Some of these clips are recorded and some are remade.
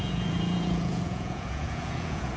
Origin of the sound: remade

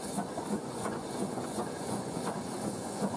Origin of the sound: remade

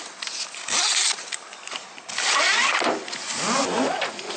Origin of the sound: recorded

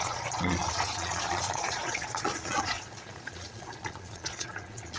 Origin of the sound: remade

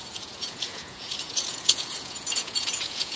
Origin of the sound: remade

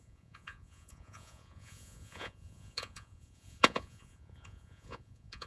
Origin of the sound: remade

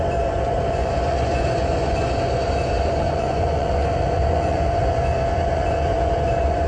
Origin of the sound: remade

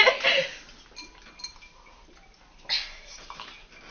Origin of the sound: recorded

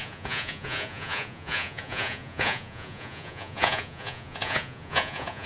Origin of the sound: remade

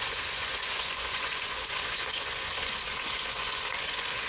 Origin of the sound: remade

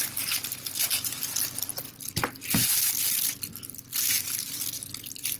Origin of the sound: recorded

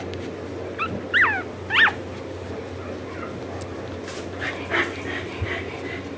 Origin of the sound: recorded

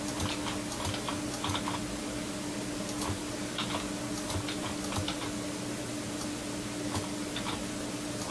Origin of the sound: recorded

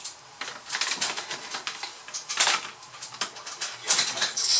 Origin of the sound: recorded